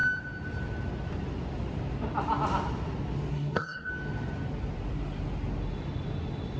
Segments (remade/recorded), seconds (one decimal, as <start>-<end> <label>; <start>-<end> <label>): 0.0-3.3 recorded; 3.3-3.9 remade; 3.9-6.6 recorded